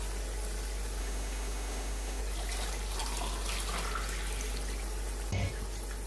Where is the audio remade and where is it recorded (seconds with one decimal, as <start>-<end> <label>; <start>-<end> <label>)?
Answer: 0.0-1.0 recorded; 1.0-2.2 remade; 2.2-6.1 recorded